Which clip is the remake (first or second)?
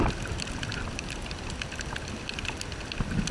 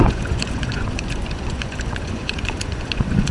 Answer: second